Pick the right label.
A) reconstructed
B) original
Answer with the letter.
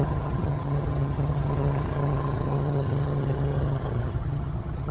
A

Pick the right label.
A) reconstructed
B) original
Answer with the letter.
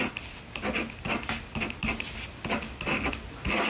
B